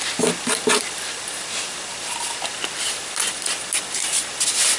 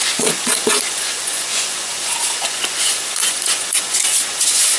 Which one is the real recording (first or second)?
first